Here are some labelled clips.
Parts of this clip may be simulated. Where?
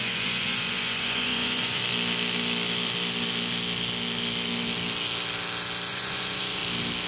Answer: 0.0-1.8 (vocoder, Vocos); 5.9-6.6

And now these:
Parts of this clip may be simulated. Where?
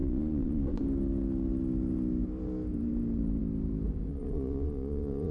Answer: 0.0-0.8 (vocoder, Vocos); 4.1-5.3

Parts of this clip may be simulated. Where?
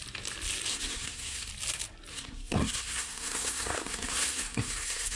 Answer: 0.7-1.5 (codec, SNAC); 2.1-5.2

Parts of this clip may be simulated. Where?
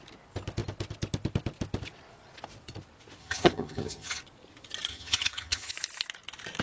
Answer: 3.2-4.2 (vocoder, HiFi-GAN); 4.9-5.7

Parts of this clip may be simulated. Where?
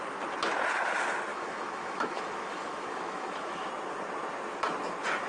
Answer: 1.3-3.7 (autoencoder, DAC-VAE)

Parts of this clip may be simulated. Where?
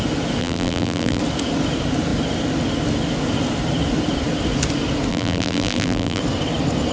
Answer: 0.4-1.2 (vocoder, BigVGAN v2); 5.1-6.2